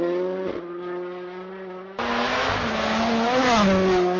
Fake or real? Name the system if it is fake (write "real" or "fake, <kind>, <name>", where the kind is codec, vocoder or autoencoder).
real